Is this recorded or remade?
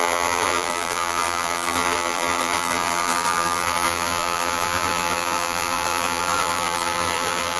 remade